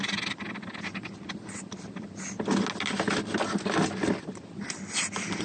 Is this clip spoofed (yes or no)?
no